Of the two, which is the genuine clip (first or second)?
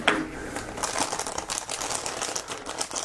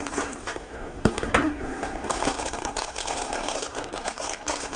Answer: first